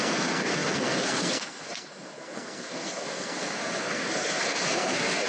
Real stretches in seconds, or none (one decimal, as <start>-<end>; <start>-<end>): none